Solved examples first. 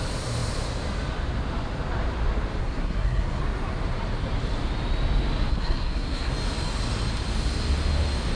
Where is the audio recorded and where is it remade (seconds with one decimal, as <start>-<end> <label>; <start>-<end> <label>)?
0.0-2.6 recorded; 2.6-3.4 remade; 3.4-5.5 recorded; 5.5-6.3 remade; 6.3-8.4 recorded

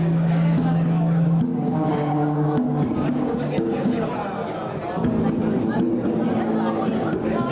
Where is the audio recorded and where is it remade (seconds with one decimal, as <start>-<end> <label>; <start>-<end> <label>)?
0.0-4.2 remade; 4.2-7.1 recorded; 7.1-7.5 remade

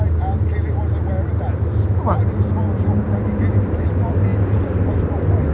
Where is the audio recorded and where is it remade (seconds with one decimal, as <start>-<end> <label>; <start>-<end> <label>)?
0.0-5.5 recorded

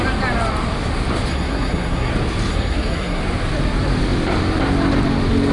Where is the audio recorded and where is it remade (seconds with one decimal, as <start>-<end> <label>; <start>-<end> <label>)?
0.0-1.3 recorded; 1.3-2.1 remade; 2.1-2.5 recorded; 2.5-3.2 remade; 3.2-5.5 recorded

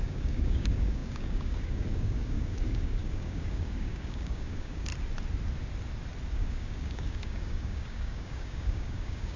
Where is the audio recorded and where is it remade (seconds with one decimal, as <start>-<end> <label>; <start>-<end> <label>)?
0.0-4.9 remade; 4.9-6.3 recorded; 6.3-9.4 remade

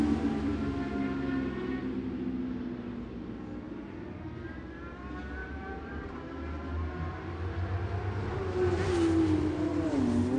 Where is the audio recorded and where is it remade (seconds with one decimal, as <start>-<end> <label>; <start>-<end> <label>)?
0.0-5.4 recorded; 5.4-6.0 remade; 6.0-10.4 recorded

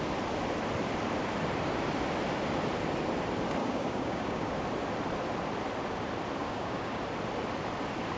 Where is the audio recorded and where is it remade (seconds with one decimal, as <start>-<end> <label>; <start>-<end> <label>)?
0.0-3.6 recorded; 3.6-4.5 remade; 4.5-6.4 recorded; 6.4-7.0 remade; 7.0-8.2 recorded

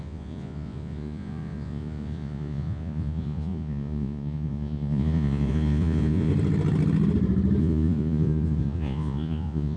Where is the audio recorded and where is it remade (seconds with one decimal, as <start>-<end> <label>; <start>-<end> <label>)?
0.0-6.3 remade; 6.3-7.6 recorded; 7.6-9.8 remade